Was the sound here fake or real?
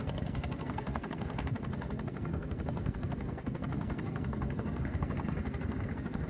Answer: fake